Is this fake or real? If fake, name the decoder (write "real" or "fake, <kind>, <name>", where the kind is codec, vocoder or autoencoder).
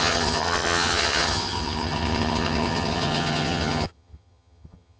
fake, vocoder, HiFi-GAN